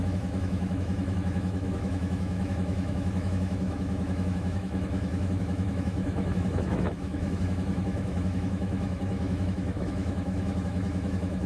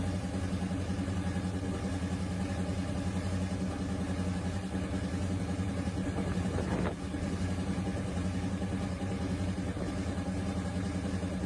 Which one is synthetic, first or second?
first